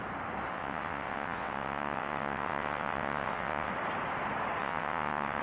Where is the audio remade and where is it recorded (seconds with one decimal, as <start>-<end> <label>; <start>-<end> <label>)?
0.0-0.5 recorded; 0.5-3.7 remade; 3.7-4.6 recorded; 4.6-5.4 remade